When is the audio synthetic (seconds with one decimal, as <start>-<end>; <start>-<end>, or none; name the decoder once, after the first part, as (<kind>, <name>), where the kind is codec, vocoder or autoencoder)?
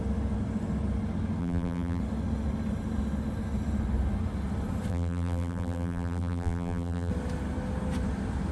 1.4-2.0 (vocoder, BigVGAN v2); 4.9-7.1